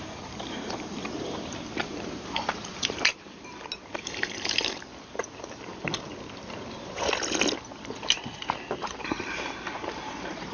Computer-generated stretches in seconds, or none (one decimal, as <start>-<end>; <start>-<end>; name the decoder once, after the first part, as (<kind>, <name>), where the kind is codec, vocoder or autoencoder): 0.0-4.9 (vocoder, BigVGAN v2); 8.7-10.5